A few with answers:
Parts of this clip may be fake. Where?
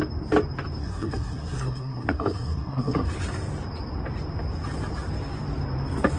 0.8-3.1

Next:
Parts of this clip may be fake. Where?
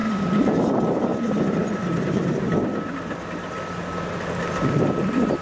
none